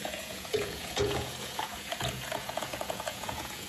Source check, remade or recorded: remade